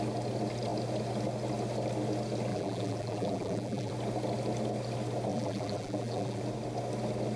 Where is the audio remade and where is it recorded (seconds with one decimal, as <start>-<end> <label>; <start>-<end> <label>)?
0.0-2.5 recorded; 2.5-3.9 remade; 3.9-5.3 recorded; 5.3-6.4 remade; 6.4-7.4 recorded